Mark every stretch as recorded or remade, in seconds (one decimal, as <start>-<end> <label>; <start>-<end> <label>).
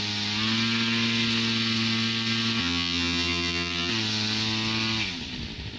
0.0-2.6 recorded; 2.6-3.9 remade; 3.9-5.8 recorded